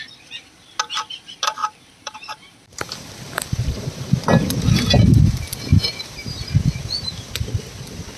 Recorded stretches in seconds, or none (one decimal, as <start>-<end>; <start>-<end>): 0.0-1.6; 4.1-5.7; 6.4-8.2